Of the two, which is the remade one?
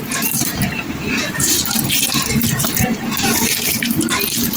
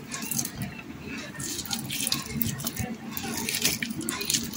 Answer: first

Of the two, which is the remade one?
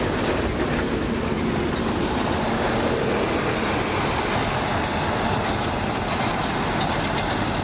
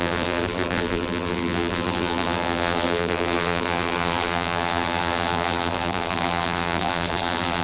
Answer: second